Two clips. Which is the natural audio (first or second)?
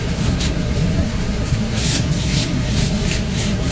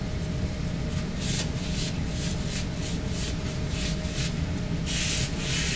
second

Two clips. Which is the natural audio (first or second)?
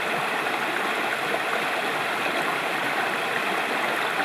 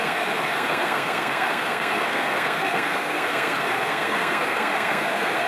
first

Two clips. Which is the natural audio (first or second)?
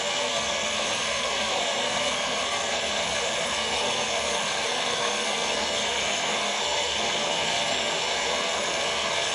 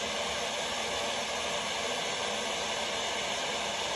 second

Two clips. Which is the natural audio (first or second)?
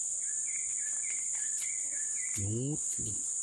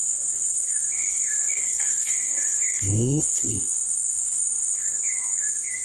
first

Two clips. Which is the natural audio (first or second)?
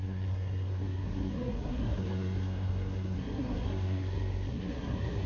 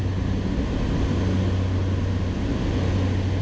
second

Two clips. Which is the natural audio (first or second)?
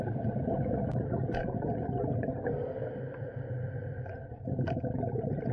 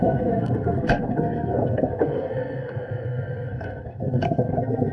first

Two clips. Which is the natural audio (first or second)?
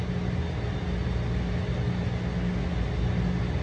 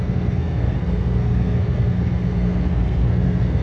first